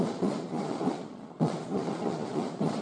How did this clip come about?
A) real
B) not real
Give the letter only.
B